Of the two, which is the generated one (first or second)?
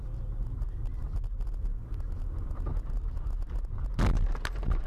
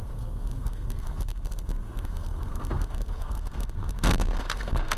second